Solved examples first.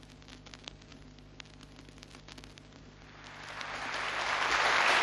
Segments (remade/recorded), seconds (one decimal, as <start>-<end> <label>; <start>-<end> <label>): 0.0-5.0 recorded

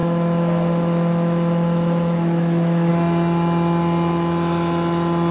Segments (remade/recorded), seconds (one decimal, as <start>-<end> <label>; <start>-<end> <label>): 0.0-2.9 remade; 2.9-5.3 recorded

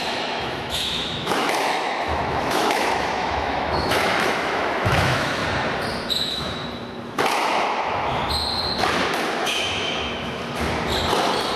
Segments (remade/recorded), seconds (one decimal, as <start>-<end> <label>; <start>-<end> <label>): 0.0-5.4 remade; 5.4-6.1 recorded; 6.1-6.6 remade; 6.6-7.4 recorded; 7.4-8.2 remade; 8.2-9.4 recorded; 9.4-10.4 remade; 10.4-11.6 recorded